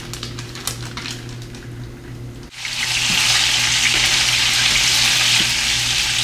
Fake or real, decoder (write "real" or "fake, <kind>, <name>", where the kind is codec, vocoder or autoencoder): real